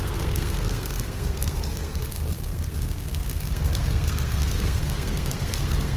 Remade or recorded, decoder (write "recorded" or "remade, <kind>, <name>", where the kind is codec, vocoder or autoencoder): remade, codec, SNAC